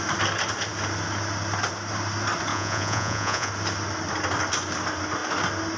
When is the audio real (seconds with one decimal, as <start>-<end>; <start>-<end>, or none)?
0.0-2.5; 3.5-5.8